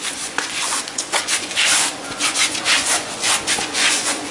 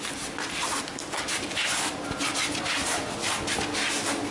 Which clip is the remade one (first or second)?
first